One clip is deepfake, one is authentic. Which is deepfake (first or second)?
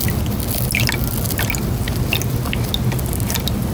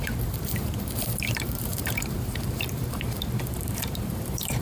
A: second